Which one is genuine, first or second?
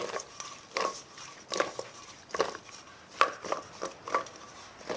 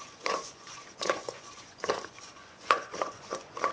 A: first